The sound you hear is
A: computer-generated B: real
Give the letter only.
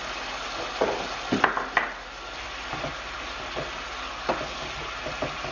B